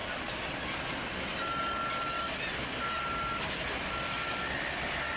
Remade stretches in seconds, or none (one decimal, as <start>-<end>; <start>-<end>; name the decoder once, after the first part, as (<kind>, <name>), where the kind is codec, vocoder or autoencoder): none